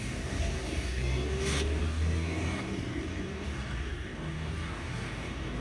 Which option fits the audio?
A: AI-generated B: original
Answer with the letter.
A